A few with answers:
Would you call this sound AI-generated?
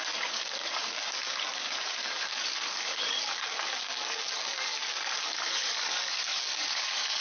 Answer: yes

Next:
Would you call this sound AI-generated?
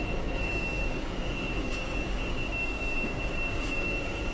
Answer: yes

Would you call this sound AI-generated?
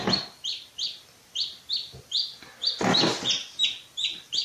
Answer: no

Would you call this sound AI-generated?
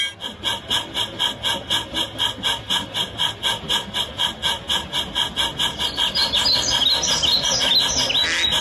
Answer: no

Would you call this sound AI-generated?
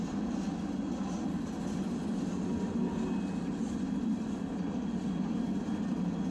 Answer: no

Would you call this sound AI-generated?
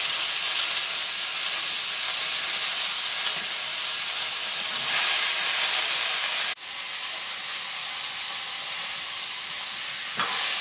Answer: no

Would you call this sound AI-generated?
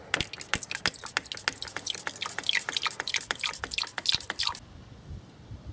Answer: no